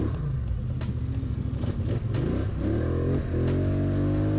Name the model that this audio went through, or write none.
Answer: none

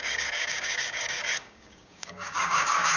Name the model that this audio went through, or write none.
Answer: codec, DAC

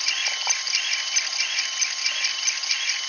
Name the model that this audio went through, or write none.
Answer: none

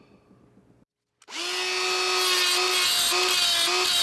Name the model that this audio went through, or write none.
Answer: none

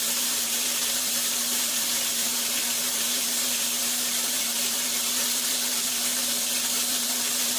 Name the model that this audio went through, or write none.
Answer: vocoder, BigVGAN v2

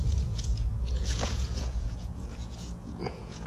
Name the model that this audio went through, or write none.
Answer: vocoder, Vocos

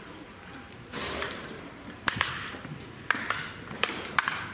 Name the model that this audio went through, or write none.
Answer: vocoder, BigVGAN v2